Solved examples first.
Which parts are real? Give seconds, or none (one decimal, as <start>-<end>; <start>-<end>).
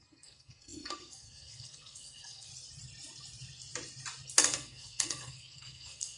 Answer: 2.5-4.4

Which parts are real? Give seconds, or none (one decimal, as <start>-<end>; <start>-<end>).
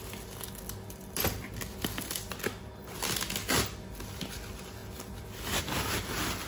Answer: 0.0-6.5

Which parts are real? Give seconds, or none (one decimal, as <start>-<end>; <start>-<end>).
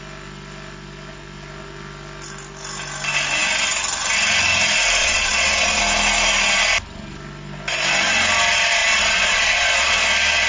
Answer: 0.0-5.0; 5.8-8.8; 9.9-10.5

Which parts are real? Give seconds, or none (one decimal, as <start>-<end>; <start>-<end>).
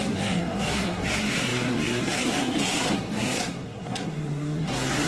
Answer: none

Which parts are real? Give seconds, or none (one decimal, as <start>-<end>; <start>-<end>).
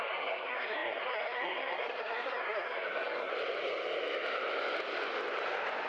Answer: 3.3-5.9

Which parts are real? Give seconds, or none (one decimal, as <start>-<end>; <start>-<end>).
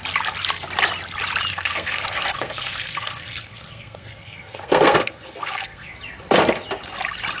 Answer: 0.0-1.5; 5.9-7.4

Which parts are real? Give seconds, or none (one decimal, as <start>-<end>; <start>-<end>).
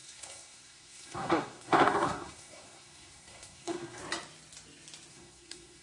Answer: 4.0-5.1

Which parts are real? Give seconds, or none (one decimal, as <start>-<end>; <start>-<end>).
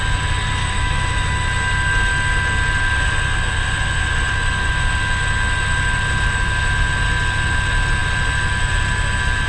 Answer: 0.0-0.6; 1.5-9.5